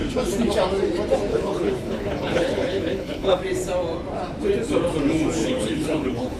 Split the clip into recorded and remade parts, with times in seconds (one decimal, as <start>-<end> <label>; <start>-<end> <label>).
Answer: 0.0-1.3 recorded; 1.3-3.4 remade; 3.4-5.4 recorded; 5.4-6.4 remade